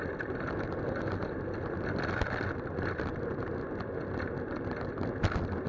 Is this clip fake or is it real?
real